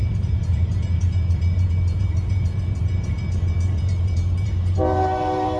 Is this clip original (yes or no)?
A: no